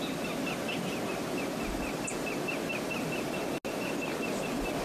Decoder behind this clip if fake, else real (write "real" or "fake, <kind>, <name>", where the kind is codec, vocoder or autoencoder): real